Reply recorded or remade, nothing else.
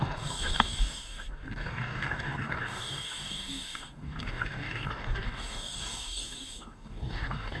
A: remade